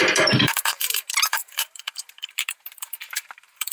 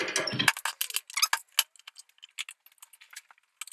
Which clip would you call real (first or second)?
second